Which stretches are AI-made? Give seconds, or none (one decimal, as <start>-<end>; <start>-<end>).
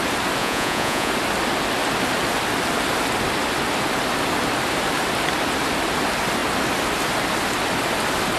0.4-1.1